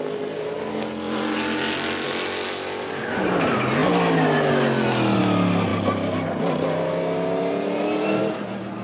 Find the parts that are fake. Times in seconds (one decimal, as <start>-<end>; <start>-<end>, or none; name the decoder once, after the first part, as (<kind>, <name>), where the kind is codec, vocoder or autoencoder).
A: none